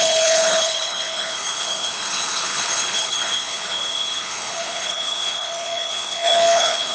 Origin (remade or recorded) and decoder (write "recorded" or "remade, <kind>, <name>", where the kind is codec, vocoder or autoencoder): remade, codec, HILCodec